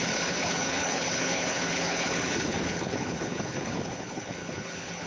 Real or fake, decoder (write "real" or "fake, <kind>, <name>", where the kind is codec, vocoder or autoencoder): fake, codec, HILCodec